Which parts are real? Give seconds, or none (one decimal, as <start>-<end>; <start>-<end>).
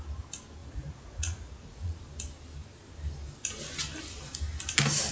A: 0.0-0.6; 2.0-5.1